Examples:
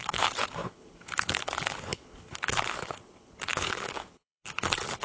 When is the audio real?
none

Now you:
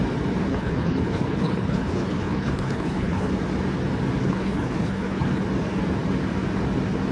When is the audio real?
0.0-0.5; 3.3-4.2; 5.4-7.1

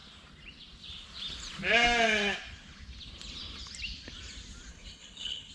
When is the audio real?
0.0-4.7

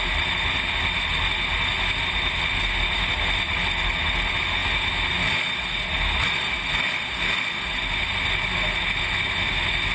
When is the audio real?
0.0-9.9

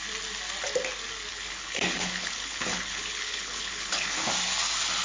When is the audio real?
0.0-1.3; 4.3-5.0